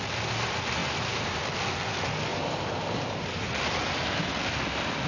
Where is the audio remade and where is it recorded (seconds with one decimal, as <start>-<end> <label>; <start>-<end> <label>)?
0.0-0.8 recorded; 0.8-1.4 remade; 1.4-2.3 recorded; 2.3-3.5 remade; 3.5-5.1 recorded